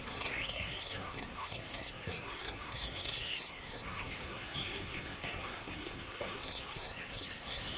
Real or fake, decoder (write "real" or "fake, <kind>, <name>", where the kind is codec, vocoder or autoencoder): fake, codec, SNAC